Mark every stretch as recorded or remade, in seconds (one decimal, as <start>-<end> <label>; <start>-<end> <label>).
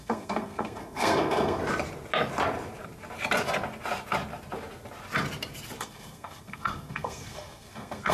0.0-1.6 remade; 1.6-5.8 recorded; 5.8-8.1 remade